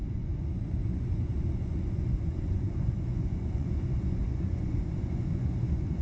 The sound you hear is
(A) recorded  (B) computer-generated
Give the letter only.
B